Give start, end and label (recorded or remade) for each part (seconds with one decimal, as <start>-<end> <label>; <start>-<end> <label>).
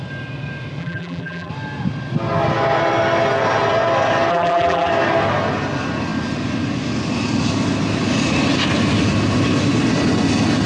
0.0-0.8 recorded; 0.8-1.5 remade; 1.5-4.3 recorded; 4.3-4.9 remade; 4.9-10.7 recorded